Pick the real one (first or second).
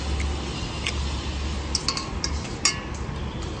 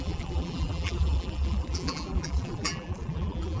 first